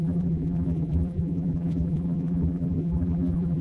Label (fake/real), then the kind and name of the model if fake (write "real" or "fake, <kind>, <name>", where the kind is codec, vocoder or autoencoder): fake, vocoder, BigVGAN v2